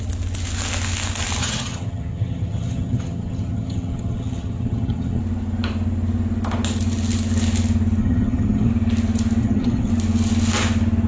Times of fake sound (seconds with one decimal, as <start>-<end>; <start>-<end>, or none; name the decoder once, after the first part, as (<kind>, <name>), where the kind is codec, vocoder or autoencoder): 1.4-5.2 (vocoder, HiFi-GAN); 8.0-8.7; 9.4-9.9